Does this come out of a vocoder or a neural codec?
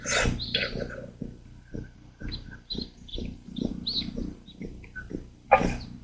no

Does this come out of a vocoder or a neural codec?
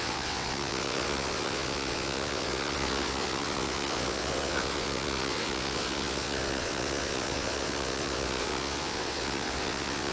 yes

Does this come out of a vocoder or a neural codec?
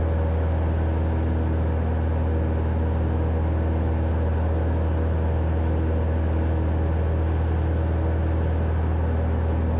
no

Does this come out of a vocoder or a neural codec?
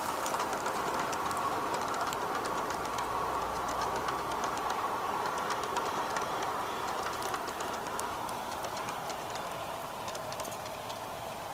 yes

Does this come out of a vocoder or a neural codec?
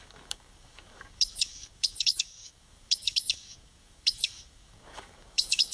yes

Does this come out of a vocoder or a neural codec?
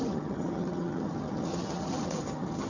yes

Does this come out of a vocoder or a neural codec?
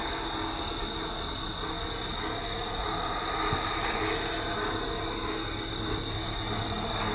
no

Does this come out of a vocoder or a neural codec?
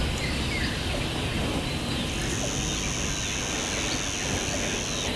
no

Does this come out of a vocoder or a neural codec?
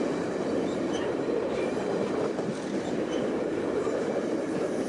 yes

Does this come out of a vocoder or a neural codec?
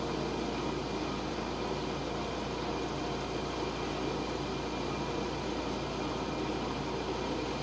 no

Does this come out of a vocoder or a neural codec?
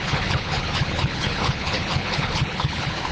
yes